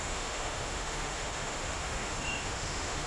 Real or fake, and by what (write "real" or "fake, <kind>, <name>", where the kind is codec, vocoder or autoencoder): fake, autoencoder, DAC-VAE